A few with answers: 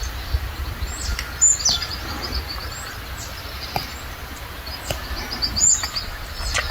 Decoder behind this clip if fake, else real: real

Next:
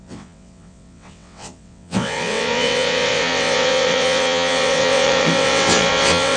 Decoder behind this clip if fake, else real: fake, vocoder, WaveNeXt